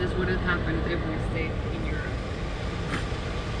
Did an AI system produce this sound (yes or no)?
no